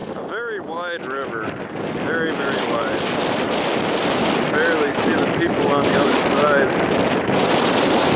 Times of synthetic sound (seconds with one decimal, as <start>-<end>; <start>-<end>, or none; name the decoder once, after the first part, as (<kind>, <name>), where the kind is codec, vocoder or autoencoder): none